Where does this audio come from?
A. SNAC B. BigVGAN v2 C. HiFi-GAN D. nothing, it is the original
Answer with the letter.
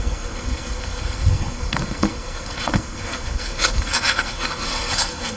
A